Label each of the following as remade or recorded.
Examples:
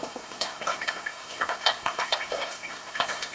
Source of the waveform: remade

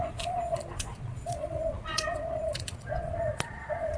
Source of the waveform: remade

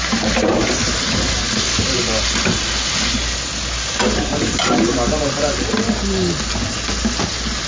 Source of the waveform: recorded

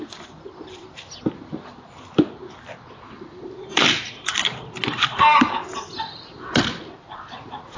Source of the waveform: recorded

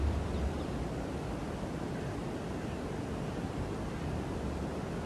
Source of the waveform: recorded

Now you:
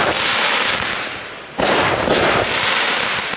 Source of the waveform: remade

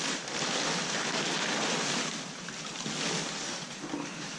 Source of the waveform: remade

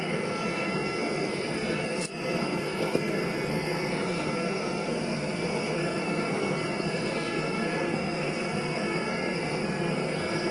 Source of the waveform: remade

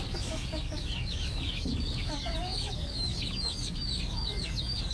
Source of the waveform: remade